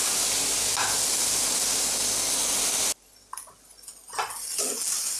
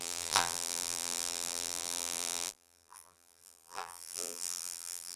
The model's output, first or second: second